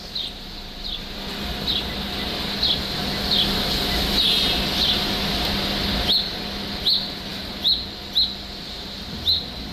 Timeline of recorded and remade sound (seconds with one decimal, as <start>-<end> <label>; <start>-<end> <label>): 0.0-9.7 recorded